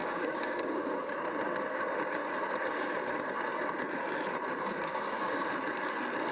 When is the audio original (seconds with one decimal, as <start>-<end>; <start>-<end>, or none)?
1.0-4.7; 5.3-6.3